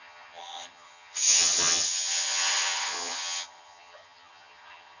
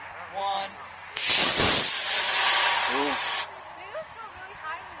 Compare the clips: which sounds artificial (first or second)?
first